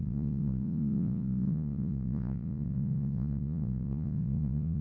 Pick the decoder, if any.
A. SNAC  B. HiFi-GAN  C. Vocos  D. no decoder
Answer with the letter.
C